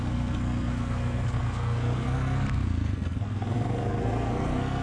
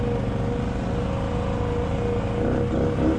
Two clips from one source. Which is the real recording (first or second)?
second